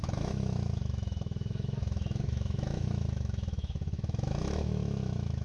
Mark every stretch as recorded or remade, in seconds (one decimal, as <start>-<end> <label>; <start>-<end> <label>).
0.0-5.4 remade

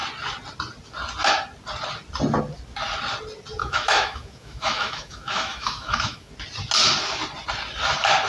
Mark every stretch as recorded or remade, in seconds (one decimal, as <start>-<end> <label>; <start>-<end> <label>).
0.0-3.6 recorded; 3.6-6.3 remade; 6.3-8.3 recorded

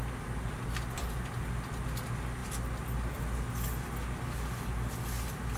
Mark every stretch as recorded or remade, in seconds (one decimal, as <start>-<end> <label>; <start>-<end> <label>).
0.0-5.6 recorded

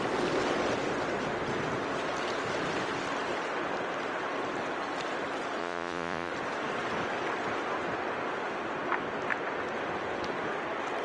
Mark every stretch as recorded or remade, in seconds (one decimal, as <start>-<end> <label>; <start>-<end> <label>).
0.0-5.6 recorded; 5.6-6.3 remade; 6.3-11.0 recorded

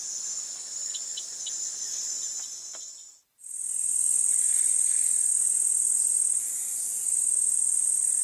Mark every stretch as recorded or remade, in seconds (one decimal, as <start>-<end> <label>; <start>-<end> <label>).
0.0-8.2 recorded